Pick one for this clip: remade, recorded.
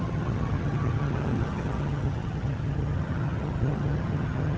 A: remade